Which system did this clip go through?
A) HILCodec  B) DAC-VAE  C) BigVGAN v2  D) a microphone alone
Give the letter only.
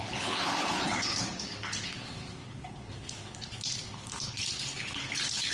A